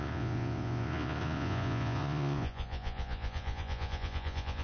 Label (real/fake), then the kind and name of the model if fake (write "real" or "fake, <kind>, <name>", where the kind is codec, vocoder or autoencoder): fake, vocoder, Vocos